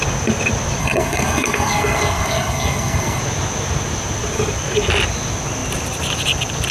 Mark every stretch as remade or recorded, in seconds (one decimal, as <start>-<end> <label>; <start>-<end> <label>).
0.0-0.8 recorded; 0.8-3.2 remade; 3.2-6.7 recorded